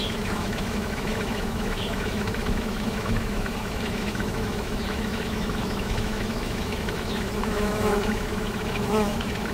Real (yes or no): no